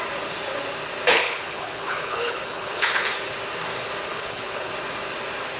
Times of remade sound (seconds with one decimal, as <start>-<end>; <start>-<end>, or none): 1.1-3.2; 4.1-4.7